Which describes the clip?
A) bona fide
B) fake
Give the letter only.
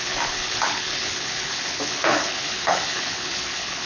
B